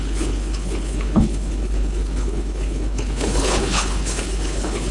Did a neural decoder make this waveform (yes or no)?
yes